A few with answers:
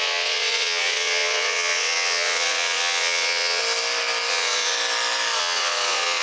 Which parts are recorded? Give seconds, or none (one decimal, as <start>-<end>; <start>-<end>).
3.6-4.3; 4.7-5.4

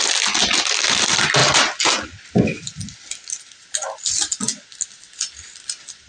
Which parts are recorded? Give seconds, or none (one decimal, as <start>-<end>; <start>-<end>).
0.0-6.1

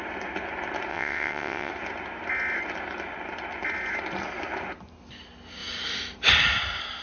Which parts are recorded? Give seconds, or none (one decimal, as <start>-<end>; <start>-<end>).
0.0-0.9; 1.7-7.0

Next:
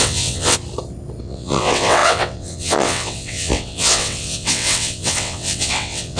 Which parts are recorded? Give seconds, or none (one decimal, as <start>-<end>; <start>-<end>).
0.6-1.2